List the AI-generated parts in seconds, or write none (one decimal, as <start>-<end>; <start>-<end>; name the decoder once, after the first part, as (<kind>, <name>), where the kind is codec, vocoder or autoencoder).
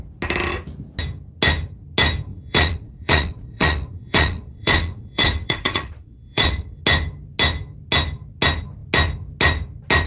2.3-6.8 (vocoder, Vocos)